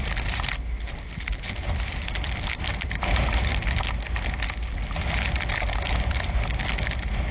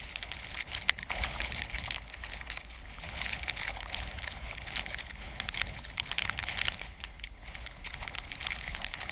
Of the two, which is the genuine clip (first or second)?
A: first